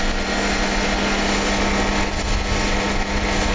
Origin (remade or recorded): recorded